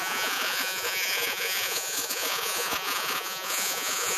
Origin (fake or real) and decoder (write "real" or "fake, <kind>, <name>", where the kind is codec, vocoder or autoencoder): fake, vocoder, Vocos